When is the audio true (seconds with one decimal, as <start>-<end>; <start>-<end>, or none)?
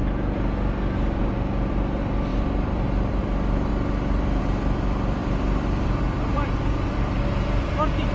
0.0-1.7; 3.7-4.4